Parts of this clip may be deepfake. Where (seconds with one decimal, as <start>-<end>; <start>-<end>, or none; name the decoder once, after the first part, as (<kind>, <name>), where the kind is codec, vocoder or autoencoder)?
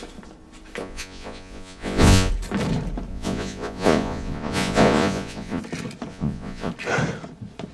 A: 0.8-2.3 (vocoder, Vocos); 3.1-5.6; 6.1-6.7